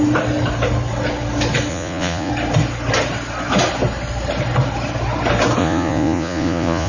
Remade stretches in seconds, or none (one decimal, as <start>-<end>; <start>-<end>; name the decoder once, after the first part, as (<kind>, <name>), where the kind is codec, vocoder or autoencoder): 1.7-2.3 (vocoder, Vocos); 5.6-6.9